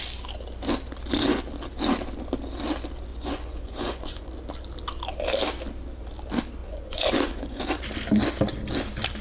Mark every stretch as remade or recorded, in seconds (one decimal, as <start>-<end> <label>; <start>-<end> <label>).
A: 0.0-3.1 recorded; 3.1-4.3 remade; 4.3-6.6 recorded; 6.6-7.6 remade; 7.6-9.2 recorded